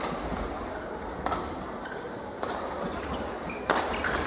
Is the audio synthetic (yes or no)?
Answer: no